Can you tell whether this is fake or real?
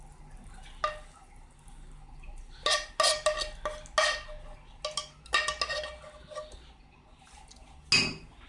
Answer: real